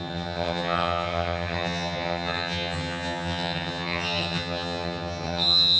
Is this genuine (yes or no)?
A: no